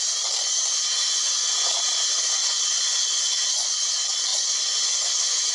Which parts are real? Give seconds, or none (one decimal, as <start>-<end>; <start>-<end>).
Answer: 0.0-1.0; 1.7-2.4; 3.7-4.3